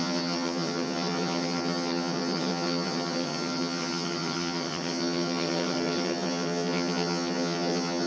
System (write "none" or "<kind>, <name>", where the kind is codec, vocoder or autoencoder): vocoder, HiFi-GAN